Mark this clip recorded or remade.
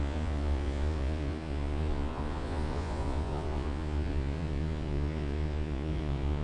remade